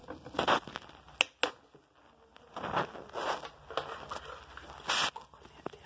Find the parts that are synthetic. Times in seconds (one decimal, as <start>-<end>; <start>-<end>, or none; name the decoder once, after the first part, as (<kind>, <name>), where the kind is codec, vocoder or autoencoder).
none